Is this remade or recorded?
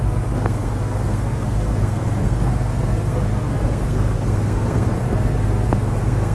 remade